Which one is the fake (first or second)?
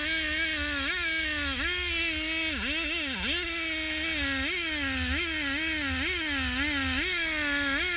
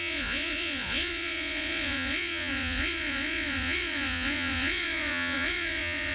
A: second